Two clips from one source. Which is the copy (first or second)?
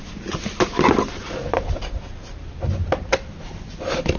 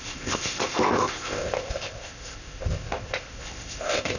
second